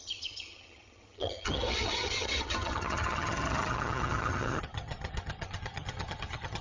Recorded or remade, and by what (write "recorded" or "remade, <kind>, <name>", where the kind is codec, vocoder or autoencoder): remade, vocoder, HiFi-GAN